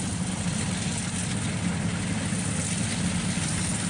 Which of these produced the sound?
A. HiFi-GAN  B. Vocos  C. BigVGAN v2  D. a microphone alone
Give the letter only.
D